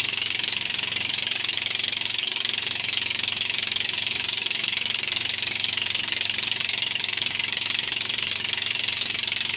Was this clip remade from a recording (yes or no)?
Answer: yes